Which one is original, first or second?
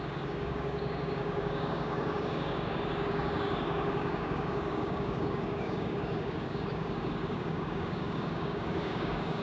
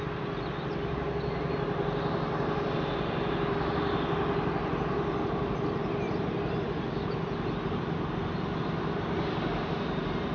second